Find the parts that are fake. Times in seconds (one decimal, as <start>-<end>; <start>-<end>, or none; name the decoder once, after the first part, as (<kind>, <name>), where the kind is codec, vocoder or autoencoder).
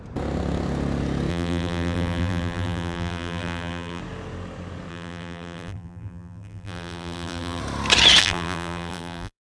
1.3-4.0 (vocoder, BigVGAN v2); 4.9-7.6; 8.2-9.4